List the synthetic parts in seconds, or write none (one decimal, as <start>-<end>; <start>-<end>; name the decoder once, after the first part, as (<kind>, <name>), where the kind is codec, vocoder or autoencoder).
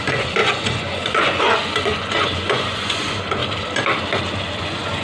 0.0-3.4 (vocoder, Vocos); 4.6-5.0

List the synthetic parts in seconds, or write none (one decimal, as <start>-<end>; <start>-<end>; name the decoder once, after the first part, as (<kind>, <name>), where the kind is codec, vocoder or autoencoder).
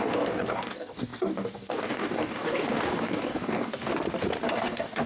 0.0-3.9 (codec, DAC); 4.5-5.1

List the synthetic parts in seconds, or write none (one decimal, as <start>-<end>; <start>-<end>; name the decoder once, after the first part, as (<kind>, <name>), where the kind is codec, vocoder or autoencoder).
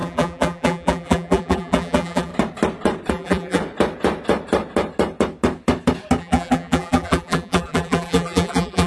0.0-2.3 (vocoder, BigVGAN v2); 3.1-3.6; 6.2-8.9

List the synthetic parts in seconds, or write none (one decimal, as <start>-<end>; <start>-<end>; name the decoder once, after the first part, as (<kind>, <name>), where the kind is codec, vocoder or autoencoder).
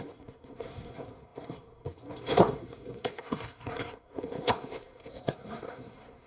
0.0-6.3 (codec, SNAC)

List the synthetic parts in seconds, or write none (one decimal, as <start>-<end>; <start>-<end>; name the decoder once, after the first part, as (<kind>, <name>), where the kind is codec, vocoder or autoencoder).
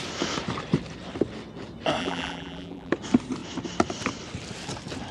2.0-2.9 (vocoder, BigVGAN v2)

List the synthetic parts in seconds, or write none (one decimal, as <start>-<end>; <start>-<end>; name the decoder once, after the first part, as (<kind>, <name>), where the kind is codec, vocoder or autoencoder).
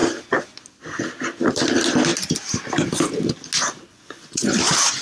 3.9-4.5 (vocoder, Vocos)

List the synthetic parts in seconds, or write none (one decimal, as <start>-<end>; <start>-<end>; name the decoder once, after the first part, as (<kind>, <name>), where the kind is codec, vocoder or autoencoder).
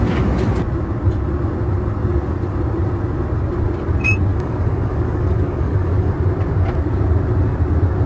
4.3-6.1 (codec, DAC)